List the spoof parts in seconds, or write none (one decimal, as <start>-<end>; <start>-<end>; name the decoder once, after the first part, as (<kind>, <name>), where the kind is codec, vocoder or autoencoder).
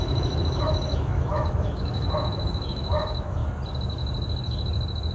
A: 0.0-3.4 (autoencoder, DAC-VAE)